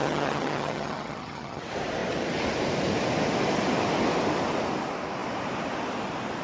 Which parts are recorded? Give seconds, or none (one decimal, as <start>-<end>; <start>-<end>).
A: 1.6-6.4